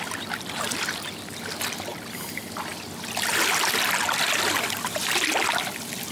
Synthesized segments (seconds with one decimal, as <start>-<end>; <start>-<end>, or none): none